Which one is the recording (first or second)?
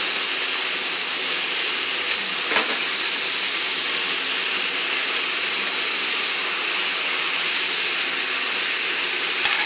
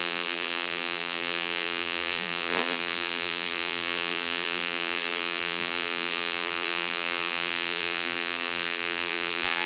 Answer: first